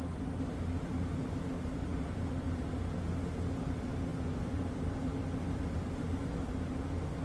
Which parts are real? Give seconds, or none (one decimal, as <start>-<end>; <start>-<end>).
0.0-1.9; 2.6-4.1; 6.0-7.2